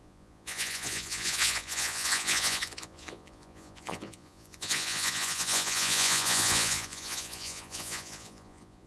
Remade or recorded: remade